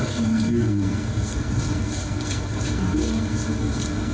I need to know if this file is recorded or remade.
remade